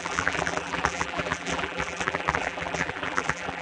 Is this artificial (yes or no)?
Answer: yes